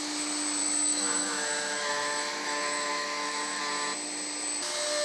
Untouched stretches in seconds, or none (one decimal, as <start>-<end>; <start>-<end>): 0.0-0.6; 3.6-5.0

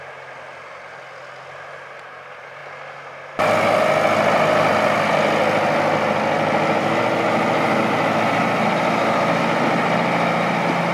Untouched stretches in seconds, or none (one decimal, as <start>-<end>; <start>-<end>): 0.0-10.9

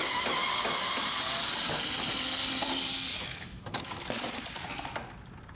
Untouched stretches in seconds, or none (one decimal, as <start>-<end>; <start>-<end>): 0.0-3.1; 3.8-5.6

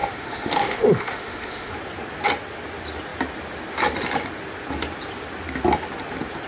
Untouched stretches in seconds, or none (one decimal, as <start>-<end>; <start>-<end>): 1.7-6.5

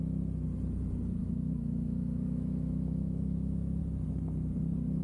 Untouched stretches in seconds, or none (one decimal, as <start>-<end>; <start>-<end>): 0.0-1.2; 3.8-5.0

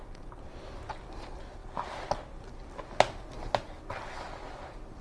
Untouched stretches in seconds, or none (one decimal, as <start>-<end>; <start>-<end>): 0.0-5.0

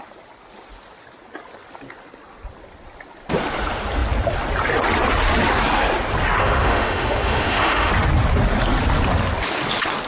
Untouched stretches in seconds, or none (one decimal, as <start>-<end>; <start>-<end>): 0.0-6.4; 7.9-10.1